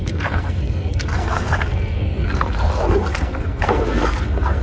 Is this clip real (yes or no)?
no